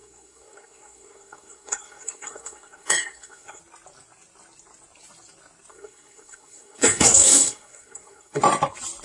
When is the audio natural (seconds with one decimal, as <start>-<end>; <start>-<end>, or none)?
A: 3.6-5.7; 8.4-9.0